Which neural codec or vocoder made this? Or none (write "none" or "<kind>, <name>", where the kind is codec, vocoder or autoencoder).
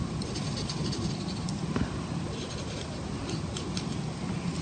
none